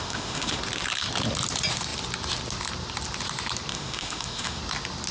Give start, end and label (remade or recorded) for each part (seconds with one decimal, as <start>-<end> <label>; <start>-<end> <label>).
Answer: 0.0-0.6 remade; 0.6-3.7 recorded; 3.7-4.6 remade; 4.6-5.1 recorded